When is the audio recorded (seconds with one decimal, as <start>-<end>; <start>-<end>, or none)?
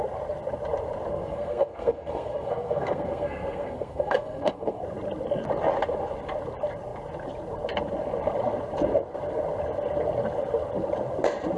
0.0-1.1; 4.8-11.6